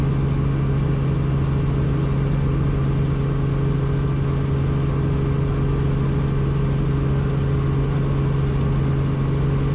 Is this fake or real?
real